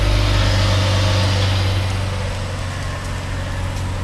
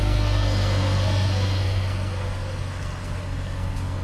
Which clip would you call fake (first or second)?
second